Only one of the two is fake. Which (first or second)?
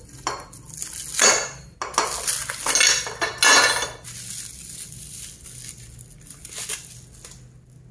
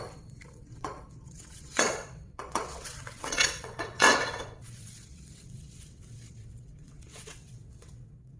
second